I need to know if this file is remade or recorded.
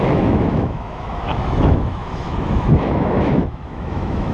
remade